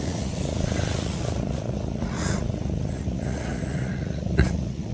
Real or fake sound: fake